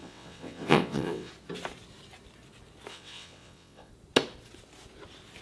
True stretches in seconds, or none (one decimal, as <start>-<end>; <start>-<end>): 1.3-2.9; 3.9-5.4